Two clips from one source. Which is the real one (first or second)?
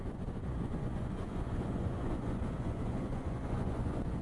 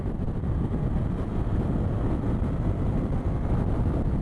second